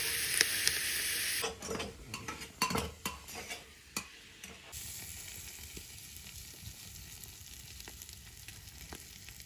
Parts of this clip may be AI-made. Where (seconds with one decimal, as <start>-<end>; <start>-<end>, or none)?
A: none